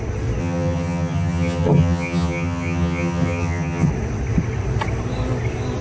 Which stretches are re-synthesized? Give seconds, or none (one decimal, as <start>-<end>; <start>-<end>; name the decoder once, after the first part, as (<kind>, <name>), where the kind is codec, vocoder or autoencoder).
0.4-3.9 (vocoder, HiFi-GAN)